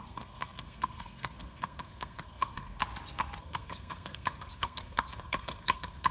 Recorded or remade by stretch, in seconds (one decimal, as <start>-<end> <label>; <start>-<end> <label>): 0.0-2.8 remade; 2.8-3.4 recorded; 3.4-6.1 remade